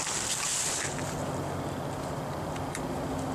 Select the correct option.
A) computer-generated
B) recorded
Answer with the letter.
B